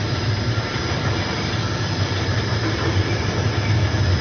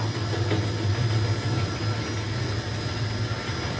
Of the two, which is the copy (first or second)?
first